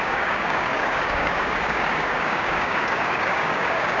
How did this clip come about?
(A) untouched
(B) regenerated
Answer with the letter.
B